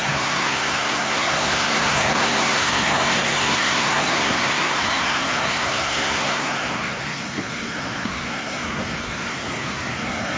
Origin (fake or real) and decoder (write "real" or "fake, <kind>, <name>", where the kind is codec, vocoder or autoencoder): fake, codec, SNAC